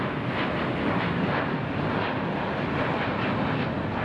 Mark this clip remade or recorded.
recorded